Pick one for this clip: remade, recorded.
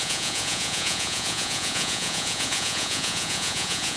remade